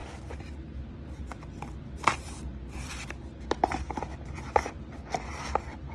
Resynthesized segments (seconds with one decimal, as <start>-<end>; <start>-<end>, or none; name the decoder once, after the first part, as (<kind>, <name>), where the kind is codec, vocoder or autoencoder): none